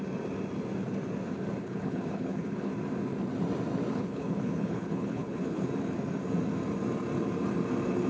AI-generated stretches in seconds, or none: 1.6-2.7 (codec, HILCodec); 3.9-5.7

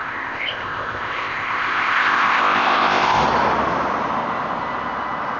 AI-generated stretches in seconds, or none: 0.0-3.2 (codec, ZipCodec)

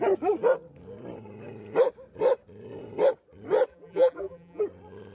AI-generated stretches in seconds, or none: 3.7-4.6 (vocoder, BigVGAN v2)

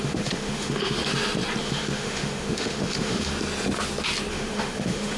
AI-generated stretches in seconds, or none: 0.0-1.0 (autoencoder, DAC-VAE); 1.6-3.3; 4.3-5.2

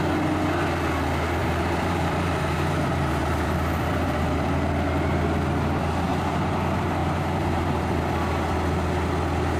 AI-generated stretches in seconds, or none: 1.4-4.5 (vocoder, BigVGAN v2); 6.1-6.6; 7.0-8.1

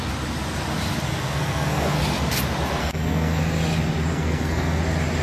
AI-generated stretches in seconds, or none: 1.1-2.0 (codec, SNAC); 2.8-3.4; 4.1-4.8

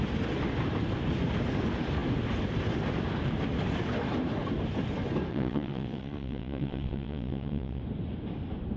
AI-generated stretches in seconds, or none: 5.3-7.8 (vocoder, WaveNeXt)

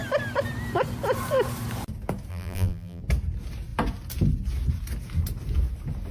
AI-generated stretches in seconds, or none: 2.3-3.0 (vocoder, BigVGAN v2)